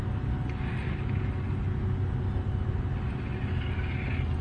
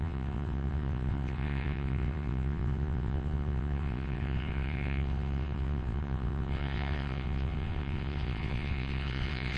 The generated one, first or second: second